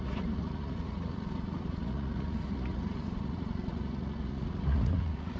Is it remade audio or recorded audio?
remade